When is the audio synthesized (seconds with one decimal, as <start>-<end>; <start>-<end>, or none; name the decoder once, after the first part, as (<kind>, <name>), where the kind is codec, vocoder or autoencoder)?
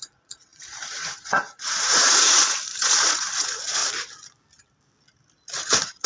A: 0.0-3.8 (vocoder, Vocos); 5.6-6.1